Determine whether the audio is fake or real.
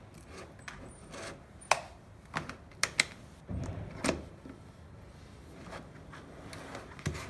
real